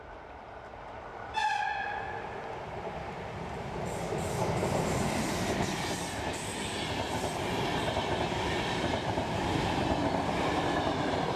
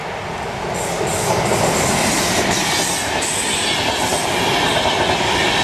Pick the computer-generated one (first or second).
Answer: first